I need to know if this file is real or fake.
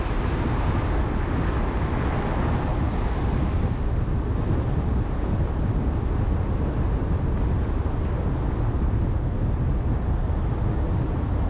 real